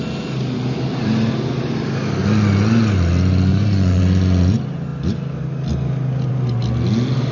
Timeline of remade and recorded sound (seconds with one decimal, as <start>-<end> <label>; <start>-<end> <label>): 0.0-3.5 recorded; 3.5-4.0 remade; 4.0-7.3 recorded